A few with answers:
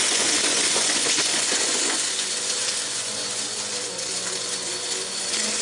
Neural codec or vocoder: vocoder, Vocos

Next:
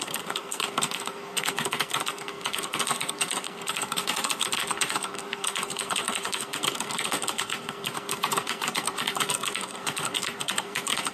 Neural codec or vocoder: codec, SNAC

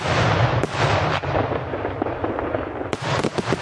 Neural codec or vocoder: none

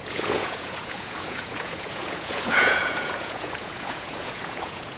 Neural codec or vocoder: vocoder, Vocos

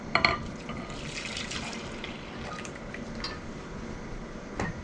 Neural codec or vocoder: vocoder, BigVGAN v2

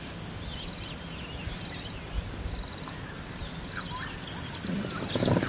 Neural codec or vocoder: none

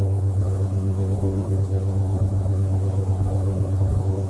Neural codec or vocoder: codec, SNAC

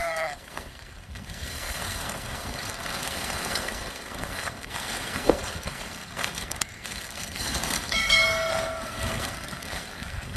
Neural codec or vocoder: codec, SNAC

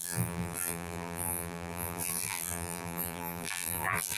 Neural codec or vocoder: vocoder, BigVGAN v2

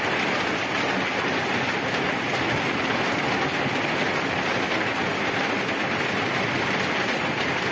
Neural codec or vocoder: none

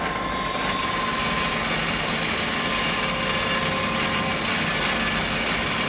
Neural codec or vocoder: none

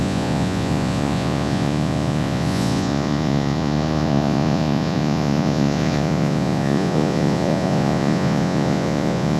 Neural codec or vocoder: vocoder, Vocos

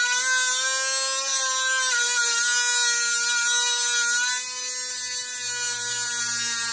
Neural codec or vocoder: none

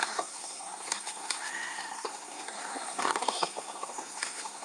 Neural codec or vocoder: codec, SNAC